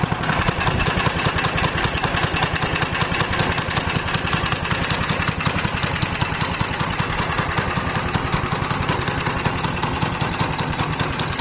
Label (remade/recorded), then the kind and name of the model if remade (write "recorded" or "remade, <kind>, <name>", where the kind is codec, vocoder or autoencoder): recorded